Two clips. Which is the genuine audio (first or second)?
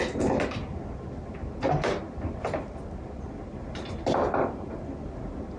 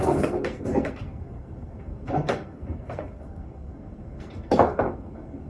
first